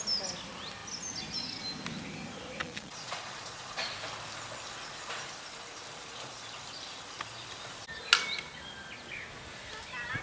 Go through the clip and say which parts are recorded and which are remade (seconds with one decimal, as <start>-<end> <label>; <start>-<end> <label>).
0.0-2.6 recorded; 2.6-4.0 remade; 4.0-10.2 recorded